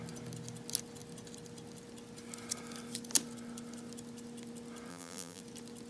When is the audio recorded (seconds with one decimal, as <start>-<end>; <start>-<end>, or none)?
0.0-4.9; 5.4-5.9